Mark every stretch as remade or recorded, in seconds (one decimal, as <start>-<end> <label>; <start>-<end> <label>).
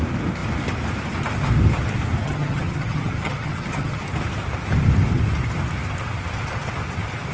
0.0-2.2 recorded; 2.2-4.0 remade; 4.0-7.3 recorded